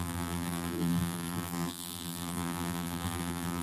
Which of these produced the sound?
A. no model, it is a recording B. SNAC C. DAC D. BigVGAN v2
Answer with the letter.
D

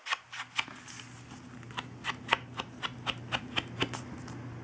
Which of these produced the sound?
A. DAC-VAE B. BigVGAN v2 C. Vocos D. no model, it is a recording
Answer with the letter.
D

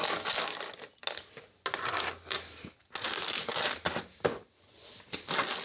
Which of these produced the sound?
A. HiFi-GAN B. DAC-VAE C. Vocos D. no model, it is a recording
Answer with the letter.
D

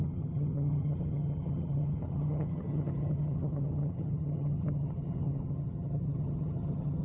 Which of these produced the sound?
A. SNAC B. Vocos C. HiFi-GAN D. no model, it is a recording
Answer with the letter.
C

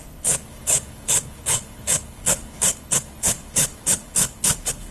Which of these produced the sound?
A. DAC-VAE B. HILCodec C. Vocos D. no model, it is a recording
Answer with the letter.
B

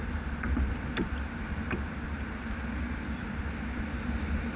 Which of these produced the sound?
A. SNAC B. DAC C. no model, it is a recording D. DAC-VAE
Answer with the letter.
C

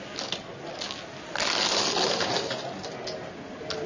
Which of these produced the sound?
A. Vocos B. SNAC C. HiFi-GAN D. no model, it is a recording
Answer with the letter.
D